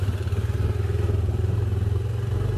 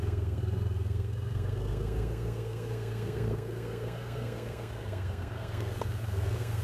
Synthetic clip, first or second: second